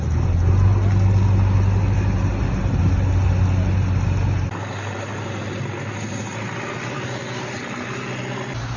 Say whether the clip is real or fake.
real